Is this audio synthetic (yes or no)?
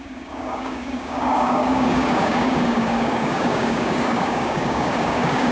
yes